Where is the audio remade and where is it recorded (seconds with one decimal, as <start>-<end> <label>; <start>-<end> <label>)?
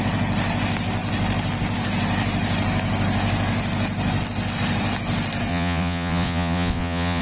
0.0-5.5 recorded; 5.5-7.2 remade